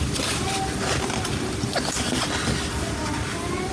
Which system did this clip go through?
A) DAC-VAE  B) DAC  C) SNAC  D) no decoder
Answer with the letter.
D